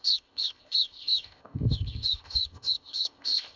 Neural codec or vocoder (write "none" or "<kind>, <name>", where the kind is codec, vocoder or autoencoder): codec, ZipCodec